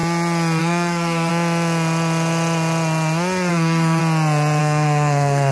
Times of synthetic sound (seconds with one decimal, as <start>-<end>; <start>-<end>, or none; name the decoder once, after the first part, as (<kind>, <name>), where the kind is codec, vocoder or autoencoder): 0.6-1.3 (codec, SNAC); 3.5-4.0; 4.6-5.5